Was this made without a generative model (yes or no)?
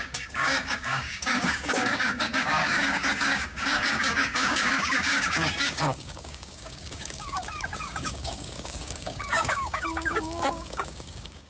no